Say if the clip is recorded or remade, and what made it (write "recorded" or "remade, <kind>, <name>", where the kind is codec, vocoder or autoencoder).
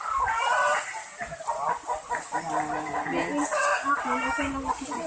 recorded